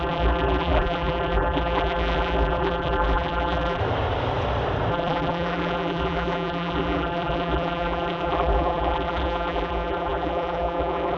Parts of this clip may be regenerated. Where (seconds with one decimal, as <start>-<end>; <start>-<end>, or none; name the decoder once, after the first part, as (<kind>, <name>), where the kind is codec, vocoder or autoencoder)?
0.0-3.8 (vocoder, BigVGAN v2); 4.9-11.2